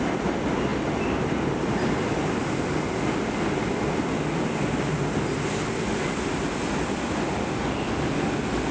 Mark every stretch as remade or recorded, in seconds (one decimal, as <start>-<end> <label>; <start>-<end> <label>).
0.0-8.7 recorded